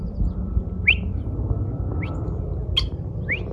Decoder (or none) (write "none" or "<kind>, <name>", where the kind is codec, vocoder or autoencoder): none